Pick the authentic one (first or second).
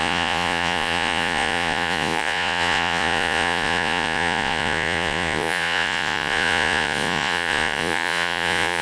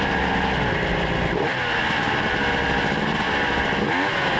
second